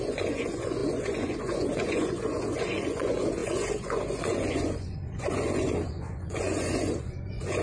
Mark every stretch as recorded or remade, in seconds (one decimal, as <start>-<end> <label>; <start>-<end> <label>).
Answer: 0.0-7.6 remade